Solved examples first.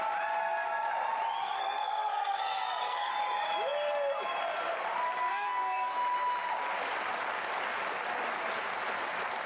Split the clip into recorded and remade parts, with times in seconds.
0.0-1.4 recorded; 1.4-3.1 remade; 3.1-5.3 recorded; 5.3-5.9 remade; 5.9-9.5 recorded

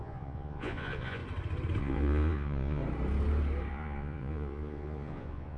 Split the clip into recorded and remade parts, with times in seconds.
0.0-1.2 remade; 1.2-1.8 recorded; 1.8-2.8 remade; 2.8-3.7 recorded; 3.7-5.6 remade

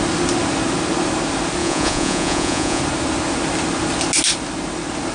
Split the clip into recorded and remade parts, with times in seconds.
0.0-1.6 recorded; 1.6-2.8 remade; 2.8-5.1 recorded

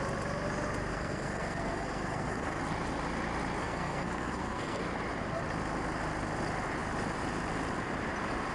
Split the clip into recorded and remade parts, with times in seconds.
0.0-0.9 recorded; 0.9-2.6 remade; 2.6-3.6 recorded; 3.6-4.8 remade; 4.8-8.5 recorded